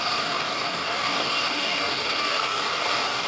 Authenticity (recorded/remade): remade